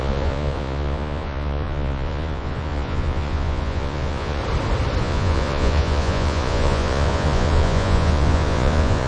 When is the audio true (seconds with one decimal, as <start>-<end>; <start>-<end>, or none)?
4.4-5.0